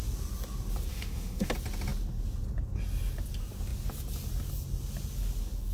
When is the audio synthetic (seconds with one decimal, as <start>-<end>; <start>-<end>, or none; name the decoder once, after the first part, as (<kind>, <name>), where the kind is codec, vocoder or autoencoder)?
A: 0.9-1.5 (autoencoder, DAC-VAE)